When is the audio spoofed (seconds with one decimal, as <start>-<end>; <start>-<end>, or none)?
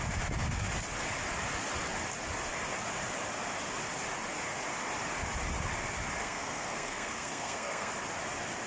6.2-7.9